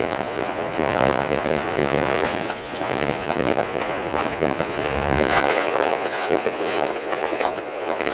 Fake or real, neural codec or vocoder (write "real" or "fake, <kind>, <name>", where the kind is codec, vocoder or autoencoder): fake, vocoder, Vocos